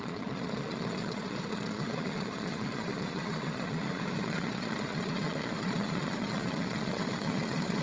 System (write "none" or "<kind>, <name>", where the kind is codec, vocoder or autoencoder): vocoder, Vocos